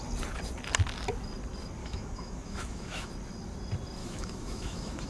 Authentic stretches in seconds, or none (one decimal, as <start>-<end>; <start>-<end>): 0.0-1.8; 3.1-4.0